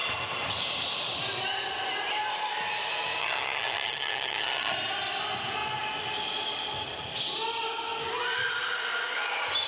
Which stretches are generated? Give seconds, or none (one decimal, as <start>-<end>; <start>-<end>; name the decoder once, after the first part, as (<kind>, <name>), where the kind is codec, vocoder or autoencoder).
3.2-4.7 (vocoder, HiFi-GAN)